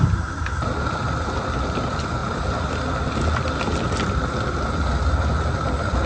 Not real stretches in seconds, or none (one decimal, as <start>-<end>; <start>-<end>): none